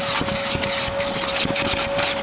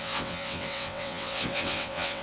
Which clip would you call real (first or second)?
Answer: first